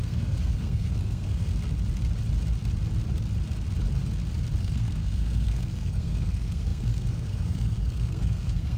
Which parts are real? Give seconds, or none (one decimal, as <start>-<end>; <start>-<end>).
1.5-4.6